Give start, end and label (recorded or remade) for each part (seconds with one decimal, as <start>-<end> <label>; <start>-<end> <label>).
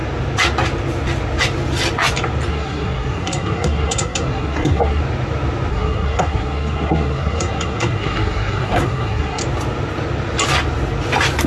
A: 0.0-2.5 recorded; 2.5-5.0 remade; 5.0-5.7 recorded; 5.7-9.4 remade; 9.4-11.5 recorded